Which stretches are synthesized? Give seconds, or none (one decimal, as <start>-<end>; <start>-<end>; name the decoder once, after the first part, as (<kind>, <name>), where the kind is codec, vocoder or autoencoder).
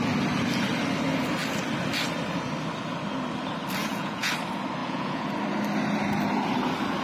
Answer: 3.8-4.3 (vocoder, Vocos); 4.8-5.3